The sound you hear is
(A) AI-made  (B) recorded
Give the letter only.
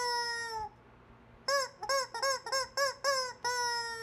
B